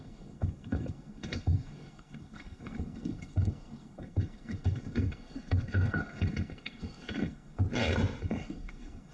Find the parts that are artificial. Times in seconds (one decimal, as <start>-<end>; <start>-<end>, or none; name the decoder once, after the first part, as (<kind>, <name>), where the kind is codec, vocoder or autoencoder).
0.0-7.6 (codec, SNAC); 8.2-9.1

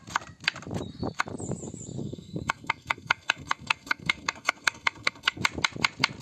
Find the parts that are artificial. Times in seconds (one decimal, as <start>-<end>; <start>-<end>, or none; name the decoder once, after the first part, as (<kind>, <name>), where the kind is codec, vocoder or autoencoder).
2.0-5.4 (codec, SNAC)

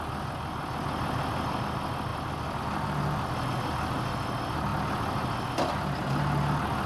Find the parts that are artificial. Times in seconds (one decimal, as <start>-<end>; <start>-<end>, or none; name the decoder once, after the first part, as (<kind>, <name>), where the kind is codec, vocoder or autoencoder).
none

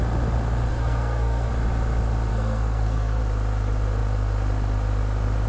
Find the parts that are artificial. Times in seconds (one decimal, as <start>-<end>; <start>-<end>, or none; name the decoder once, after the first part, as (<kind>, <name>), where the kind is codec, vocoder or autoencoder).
0.7-1.5 (codec, SNAC); 2.3-3.2

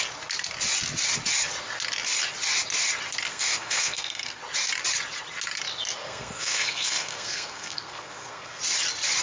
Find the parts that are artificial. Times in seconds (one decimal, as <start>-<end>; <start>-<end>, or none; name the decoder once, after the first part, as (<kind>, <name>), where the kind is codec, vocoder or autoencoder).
3.3-4.4 (codec, SNAC); 6.0-8.6